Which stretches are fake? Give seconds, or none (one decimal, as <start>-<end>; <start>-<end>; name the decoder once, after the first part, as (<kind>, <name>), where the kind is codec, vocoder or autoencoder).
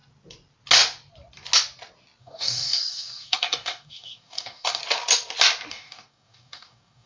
2.2-4.8 (codec, DAC); 5.7-7.1